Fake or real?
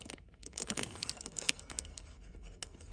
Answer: fake